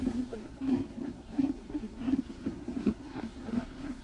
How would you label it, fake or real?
fake